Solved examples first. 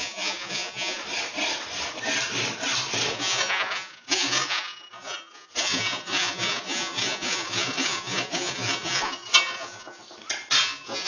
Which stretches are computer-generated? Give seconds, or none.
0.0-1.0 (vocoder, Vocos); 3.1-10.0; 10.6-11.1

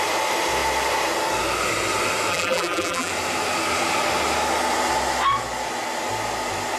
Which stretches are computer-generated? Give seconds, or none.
2.3-3.1 (vocoder, BigVGAN v2)

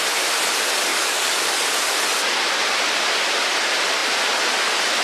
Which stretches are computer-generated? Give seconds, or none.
0.9-1.7 (codec, DAC)